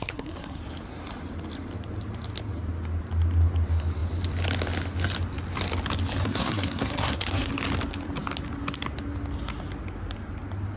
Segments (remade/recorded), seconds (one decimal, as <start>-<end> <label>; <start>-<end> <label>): 0.0-0.6 remade; 0.6-6.2 recorded; 6.2-7.5 remade; 7.5-10.8 recorded